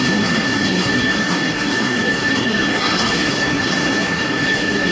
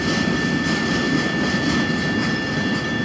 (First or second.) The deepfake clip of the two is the first